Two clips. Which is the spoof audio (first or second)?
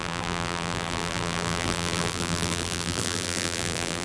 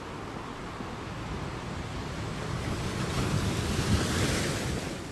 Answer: first